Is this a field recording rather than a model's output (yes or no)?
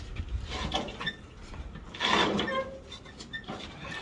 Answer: yes